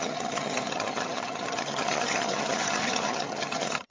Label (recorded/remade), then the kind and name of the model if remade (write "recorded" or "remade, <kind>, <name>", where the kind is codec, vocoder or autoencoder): remade, vocoder, HiFi-GAN